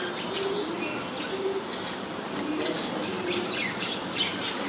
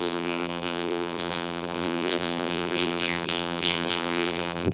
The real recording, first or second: first